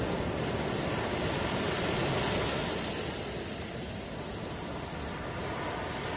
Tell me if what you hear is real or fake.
real